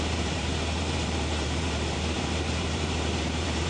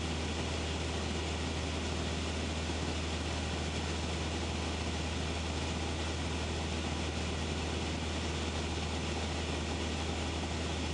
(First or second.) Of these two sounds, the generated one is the first